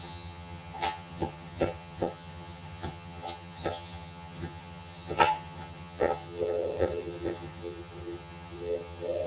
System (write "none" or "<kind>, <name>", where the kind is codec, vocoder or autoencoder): vocoder, HiFi-GAN